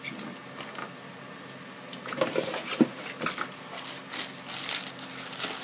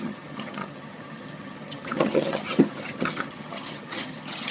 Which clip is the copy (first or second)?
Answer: second